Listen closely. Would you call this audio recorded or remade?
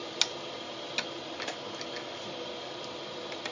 recorded